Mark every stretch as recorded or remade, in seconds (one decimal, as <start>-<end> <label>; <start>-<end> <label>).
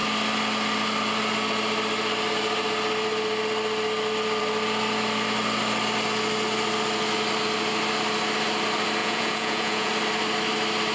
0.0-9.0 recorded; 9.0-9.9 remade; 9.9-10.9 recorded